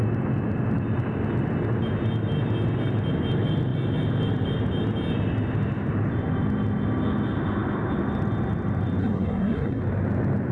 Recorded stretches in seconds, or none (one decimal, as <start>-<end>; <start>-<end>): 0.0-9.0; 9.8-10.5